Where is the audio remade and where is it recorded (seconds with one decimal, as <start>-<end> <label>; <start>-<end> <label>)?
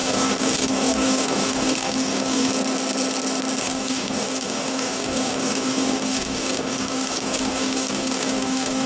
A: 0.0-2.5 remade; 2.5-3.6 recorded; 3.6-8.9 remade